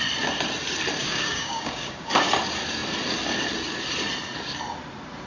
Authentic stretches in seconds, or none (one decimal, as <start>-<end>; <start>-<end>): 0.0-1.0; 2.3-5.3